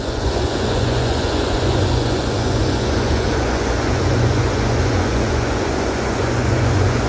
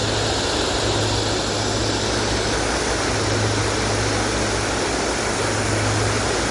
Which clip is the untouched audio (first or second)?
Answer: second